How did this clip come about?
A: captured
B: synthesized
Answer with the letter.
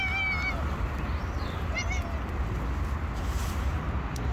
A